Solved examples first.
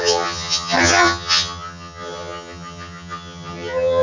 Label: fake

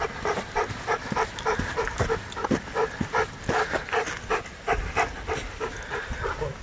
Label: real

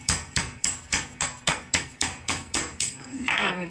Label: fake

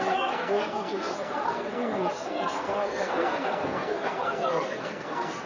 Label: fake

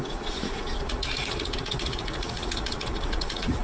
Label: fake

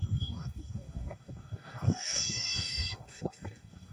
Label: fake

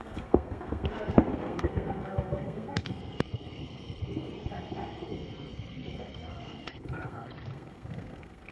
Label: fake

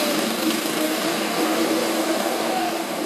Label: fake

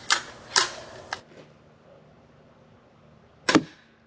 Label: real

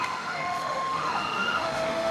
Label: fake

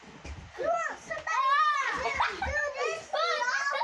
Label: real